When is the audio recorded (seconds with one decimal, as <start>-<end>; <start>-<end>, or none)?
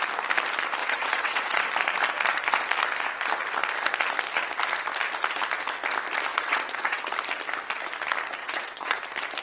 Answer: 0.0-0.8; 1.7-6.3; 7.0-8.4; 9.0-9.4